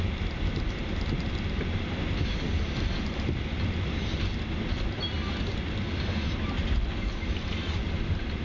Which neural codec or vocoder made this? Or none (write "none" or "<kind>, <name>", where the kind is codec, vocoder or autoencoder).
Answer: none